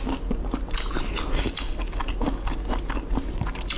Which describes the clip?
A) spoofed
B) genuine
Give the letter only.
B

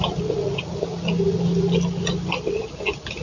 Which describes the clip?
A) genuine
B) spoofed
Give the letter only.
A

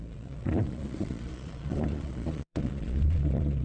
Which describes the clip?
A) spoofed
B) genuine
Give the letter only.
A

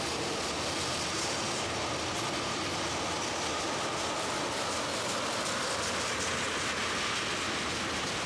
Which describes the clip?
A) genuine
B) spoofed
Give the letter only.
A